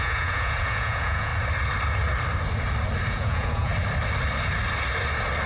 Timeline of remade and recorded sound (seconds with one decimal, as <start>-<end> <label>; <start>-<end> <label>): 0.0-1.3 remade; 1.3-3.1 recorded; 3.1-3.7 remade; 3.7-5.5 recorded